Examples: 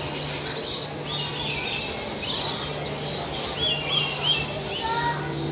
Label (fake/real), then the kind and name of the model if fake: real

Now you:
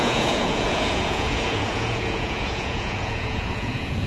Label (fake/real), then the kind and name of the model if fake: fake, vocoder, Vocos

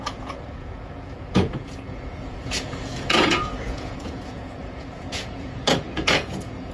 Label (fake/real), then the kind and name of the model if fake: fake, vocoder, Vocos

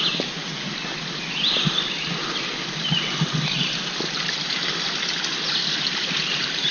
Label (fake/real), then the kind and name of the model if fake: real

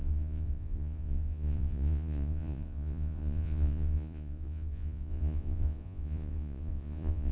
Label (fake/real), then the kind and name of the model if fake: fake, vocoder, Vocos